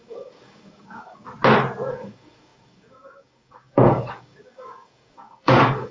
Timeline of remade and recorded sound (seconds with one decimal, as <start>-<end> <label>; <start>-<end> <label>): 0.0-1.3 remade; 1.3-1.9 recorded; 1.9-5.9 remade